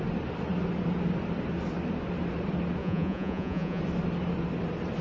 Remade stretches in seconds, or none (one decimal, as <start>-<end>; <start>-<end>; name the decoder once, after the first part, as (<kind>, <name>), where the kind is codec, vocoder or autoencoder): 2.8-3.8 (vocoder, Vocos)